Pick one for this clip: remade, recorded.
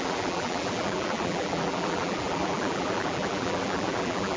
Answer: remade